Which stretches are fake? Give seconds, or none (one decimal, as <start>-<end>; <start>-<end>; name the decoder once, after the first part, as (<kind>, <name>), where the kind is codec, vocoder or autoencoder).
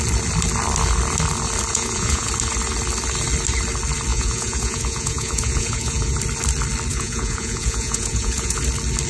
1.7-2.3 (vocoder, Vocos); 4.1-6.2; 6.9-8.6